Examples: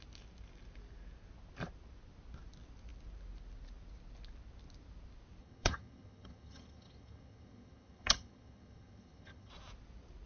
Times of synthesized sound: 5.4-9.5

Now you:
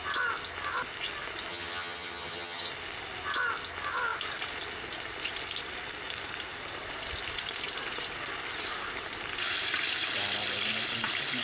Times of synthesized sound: 1.5-2.7

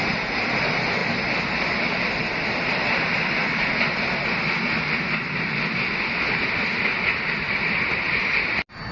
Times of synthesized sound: none

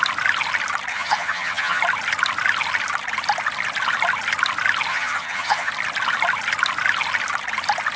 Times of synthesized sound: 0.9-1.8; 4.9-5.7

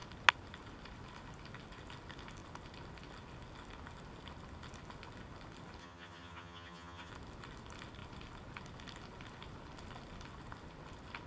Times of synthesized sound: 5.8-7.1

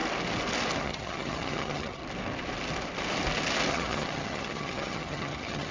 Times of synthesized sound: 0.8-2.0; 3.7-5.7

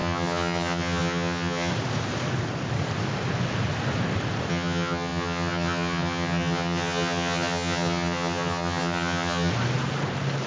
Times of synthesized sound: 0.0-1.7; 4.5-9.5